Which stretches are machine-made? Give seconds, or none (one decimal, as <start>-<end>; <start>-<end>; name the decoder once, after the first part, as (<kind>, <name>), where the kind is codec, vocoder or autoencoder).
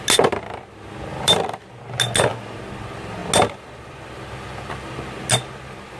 1.1-1.8 (vocoder, BigVGAN v2)